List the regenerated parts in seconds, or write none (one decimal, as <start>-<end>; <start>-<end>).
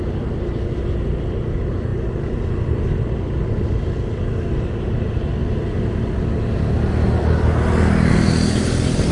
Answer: none